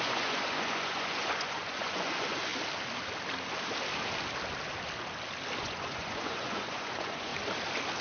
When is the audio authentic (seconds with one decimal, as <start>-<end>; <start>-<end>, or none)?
2.5-5.6; 7.3-8.0